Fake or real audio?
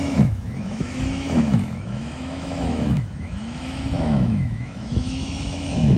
fake